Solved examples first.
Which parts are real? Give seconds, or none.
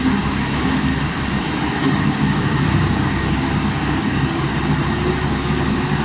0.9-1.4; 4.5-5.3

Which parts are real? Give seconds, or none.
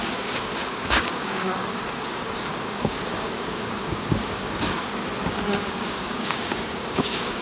5.0-5.7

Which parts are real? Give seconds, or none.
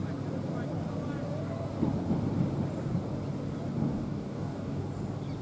0.0-3.9; 4.8-5.4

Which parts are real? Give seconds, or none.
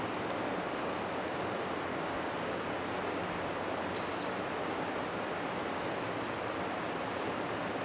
0.0-1.9; 2.6-7.8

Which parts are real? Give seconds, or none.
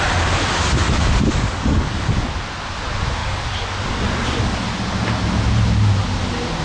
0.0-0.8; 2.3-3.2; 4.0-6.6